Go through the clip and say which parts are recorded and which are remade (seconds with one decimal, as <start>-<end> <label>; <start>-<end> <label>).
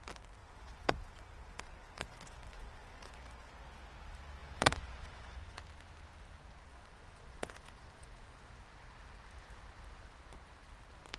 0.0-0.4 recorded; 0.4-3.5 remade; 3.5-4.4 recorded; 4.4-5.6 remade; 5.6-6.7 recorded; 6.7-8.5 remade; 8.5-11.2 recorded